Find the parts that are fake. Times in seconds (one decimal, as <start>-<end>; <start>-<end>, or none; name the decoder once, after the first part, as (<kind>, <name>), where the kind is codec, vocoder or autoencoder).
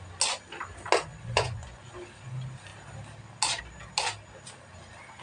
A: 1.1-1.9 (vocoder, Vocos)